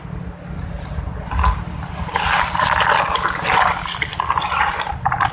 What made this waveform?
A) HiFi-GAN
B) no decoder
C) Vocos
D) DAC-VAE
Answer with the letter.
B